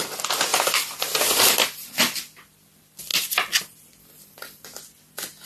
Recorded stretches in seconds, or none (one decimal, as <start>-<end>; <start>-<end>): 0.0-5.5